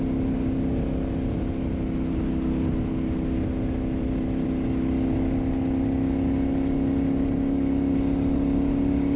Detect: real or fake real